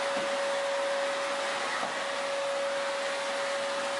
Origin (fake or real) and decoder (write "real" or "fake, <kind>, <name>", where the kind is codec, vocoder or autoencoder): real